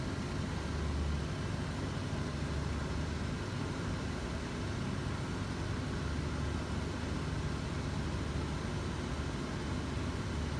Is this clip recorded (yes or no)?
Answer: yes